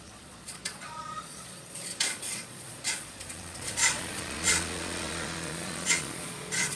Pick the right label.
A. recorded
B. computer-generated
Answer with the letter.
B